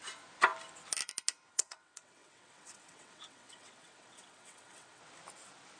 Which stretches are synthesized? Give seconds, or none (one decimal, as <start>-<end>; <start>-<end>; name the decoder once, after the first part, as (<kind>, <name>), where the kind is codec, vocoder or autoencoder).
1.5-5.0 (vocoder, WaveNeXt)